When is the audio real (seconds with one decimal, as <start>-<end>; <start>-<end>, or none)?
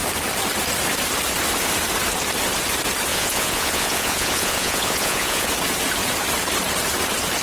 0.0-3.1; 5.5-7.4